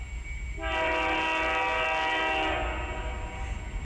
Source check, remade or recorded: recorded